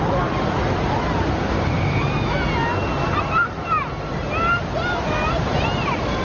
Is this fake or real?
real